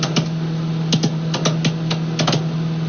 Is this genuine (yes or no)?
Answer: yes